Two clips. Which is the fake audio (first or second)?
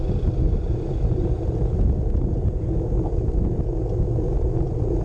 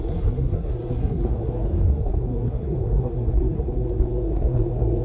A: second